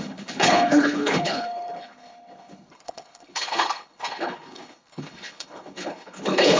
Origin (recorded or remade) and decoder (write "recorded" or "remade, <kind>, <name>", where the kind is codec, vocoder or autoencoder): remade, codec, HILCodec